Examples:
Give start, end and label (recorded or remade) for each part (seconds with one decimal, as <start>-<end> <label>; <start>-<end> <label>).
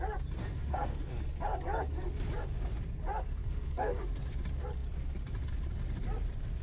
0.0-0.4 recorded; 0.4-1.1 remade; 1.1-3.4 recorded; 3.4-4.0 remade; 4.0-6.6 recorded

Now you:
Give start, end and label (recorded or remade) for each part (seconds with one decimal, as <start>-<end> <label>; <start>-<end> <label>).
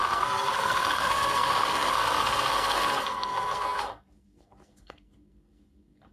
0.0-6.1 remade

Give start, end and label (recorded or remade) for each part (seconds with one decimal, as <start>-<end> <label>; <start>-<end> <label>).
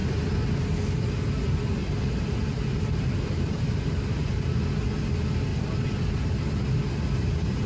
0.0-0.6 remade; 0.6-1.8 recorded; 1.8-4.5 remade; 4.5-5.5 recorded; 5.5-6.4 remade; 6.4-7.7 recorded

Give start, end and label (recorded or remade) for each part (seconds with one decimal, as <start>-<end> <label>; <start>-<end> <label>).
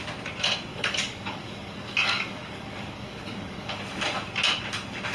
0.0-0.7 recorded; 0.7-3.8 remade; 3.8-5.1 recorded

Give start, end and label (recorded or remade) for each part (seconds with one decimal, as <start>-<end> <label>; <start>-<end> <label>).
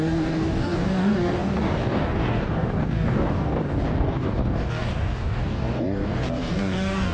0.0-7.1 remade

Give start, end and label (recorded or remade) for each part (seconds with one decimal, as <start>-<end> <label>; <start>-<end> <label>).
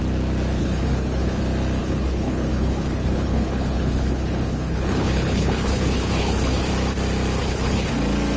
0.0-0.6 recorded; 0.6-1.4 remade; 1.4-1.8 recorded; 1.8-6.7 remade; 6.7-7.4 recorded; 7.4-7.9 remade; 7.9-8.4 recorded